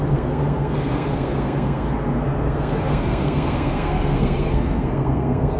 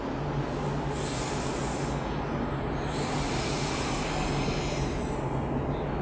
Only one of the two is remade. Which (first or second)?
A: first